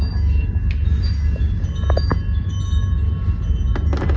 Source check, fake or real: real